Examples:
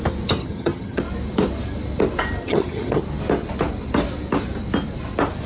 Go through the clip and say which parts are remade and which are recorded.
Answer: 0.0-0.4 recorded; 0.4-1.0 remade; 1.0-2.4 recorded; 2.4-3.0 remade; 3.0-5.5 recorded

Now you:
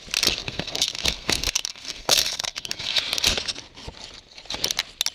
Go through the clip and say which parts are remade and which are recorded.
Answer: 0.0-0.4 recorded; 0.4-3.0 remade; 3.0-5.1 recorded

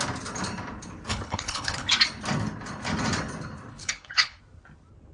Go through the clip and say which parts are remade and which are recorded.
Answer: 0.0-1.1 recorded; 1.1-1.9 remade; 1.9-3.7 recorded; 3.7-4.4 remade; 4.4-5.1 recorded

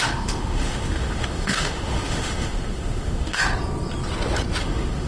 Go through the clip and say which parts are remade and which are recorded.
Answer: 0.0-3.4 remade; 3.4-4.6 recorded; 4.6-5.1 remade

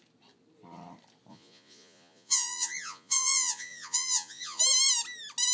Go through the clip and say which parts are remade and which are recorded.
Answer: 0.0-1.3 recorded; 1.3-4.6 remade; 4.6-5.5 recorded

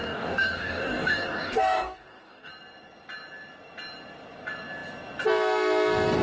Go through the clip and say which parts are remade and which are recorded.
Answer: 0.0-2.5 remade; 2.5-6.2 recorded

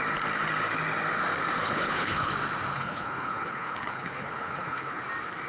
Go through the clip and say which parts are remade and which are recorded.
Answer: 0.0-1.6 recorded; 1.6-2.3 remade; 2.3-2.7 recorded; 2.7-5.0 remade; 5.0-5.5 recorded